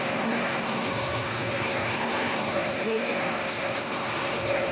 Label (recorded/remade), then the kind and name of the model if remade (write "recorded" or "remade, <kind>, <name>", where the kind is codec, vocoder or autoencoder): remade, codec, SNAC